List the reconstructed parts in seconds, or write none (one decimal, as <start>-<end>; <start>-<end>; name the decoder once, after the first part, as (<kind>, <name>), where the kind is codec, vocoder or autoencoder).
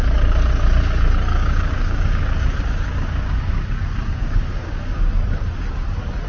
1.3-5.1 (codec, DAC)